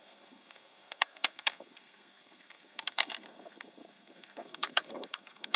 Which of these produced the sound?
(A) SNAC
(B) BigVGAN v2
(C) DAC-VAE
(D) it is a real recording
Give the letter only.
A